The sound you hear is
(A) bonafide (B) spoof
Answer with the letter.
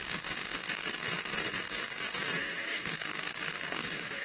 B